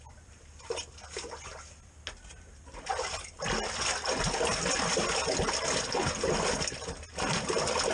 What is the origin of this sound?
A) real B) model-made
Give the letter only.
A